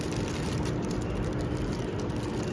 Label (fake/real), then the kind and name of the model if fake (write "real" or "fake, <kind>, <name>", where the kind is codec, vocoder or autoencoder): fake, vocoder, BigVGAN v2